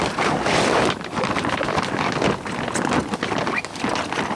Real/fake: real